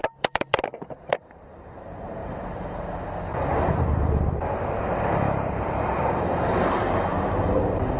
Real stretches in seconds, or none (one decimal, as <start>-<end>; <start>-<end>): 2.2-2.7; 3.3-5.5